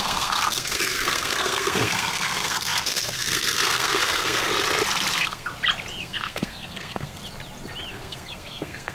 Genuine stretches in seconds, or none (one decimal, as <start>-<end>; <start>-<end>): 4.5-5.1; 5.5-6.0; 7.2-7.9